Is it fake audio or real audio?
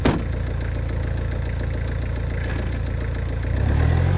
real